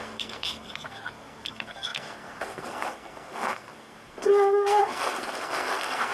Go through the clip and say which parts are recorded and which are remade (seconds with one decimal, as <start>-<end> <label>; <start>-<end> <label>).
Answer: 0.0-6.1 remade